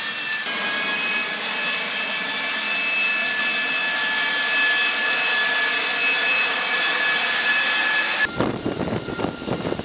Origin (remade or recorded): recorded